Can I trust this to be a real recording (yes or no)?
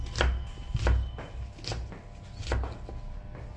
yes